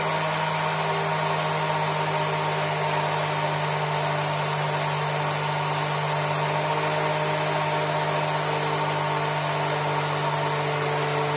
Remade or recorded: recorded